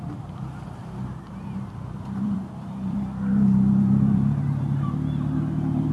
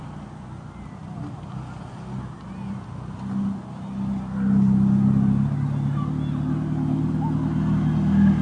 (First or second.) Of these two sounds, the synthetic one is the first